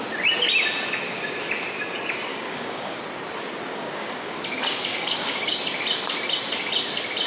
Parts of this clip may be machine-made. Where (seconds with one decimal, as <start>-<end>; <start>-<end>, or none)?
2.3-3.0; 3.7-4.4; 4.9-5.6